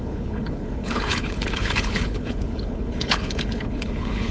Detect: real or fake fake